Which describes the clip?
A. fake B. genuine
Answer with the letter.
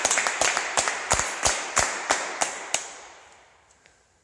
A